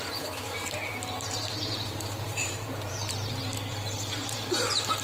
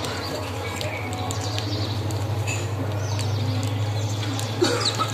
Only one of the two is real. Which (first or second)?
second